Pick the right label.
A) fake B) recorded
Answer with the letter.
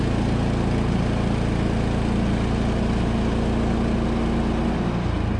B